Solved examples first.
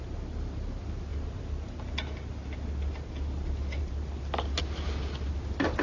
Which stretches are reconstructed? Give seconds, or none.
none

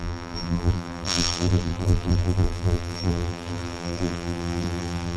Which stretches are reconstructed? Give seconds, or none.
0.0-5.2

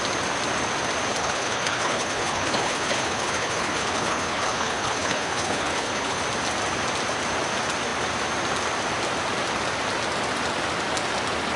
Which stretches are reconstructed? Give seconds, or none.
1.2-6.2

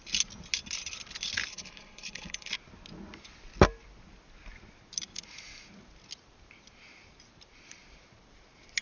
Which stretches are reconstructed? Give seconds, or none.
1.5-2.5

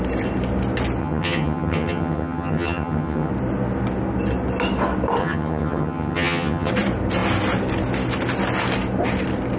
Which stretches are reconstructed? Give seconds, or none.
1.0-3.3; 5.2-6.7